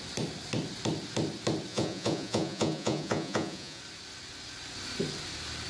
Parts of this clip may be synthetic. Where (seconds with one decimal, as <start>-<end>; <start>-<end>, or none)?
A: 1.7-3.8